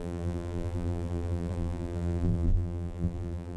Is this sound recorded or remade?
remade